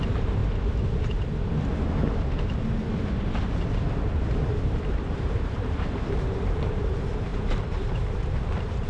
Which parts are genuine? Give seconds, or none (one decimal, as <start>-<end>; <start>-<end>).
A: 0.4-4.8